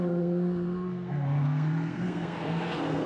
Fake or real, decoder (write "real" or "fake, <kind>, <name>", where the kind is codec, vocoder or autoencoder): fake, codec, SNAC